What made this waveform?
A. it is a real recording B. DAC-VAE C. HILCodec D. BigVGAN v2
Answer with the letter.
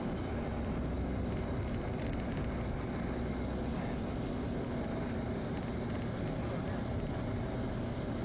A